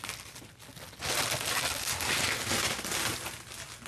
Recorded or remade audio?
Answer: recorded